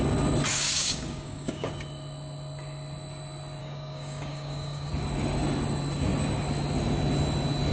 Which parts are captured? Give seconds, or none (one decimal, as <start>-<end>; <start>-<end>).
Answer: 0.0-0.5; 1.7-3.6; 4.9-7.7